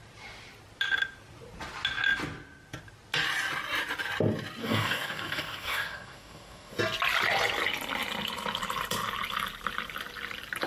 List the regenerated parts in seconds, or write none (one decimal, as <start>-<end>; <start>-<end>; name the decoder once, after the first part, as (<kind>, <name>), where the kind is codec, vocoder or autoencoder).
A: 4.6-6.8 (codec, DAC)